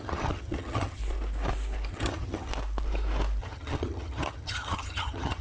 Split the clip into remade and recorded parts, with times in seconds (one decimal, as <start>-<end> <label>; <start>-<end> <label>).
0.0-1.0 remade; 1.0-1.9 recorded; 1.9-2.5 remade; 2.5-3.4 recorded; 3.4-5.4 remade